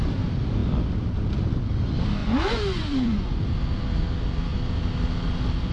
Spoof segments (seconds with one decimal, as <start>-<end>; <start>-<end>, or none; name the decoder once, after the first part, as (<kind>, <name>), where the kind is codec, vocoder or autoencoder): 2.2-3.4 (vocoder, Vocos)